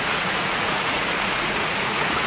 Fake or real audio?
fake